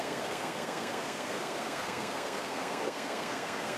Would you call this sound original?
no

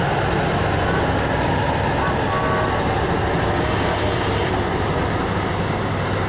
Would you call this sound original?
yes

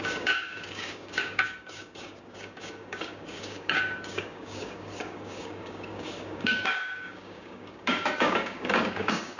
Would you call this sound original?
no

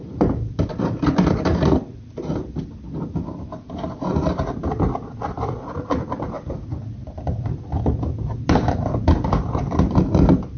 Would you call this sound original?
no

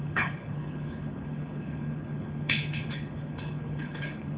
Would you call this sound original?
no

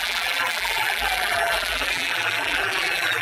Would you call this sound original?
no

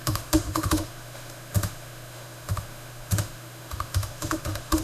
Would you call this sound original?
no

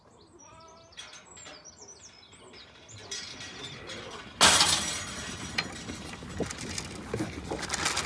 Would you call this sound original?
yes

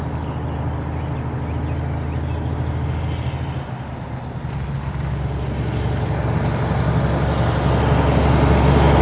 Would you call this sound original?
yes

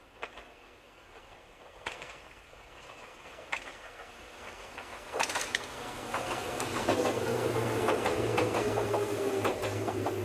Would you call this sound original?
no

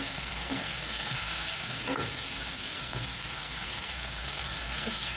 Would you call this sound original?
no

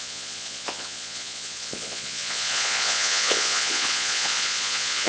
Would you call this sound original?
no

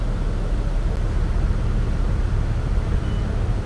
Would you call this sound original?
yes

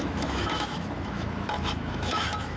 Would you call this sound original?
no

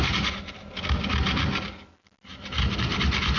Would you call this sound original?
yes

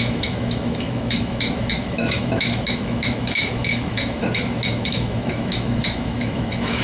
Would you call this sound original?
no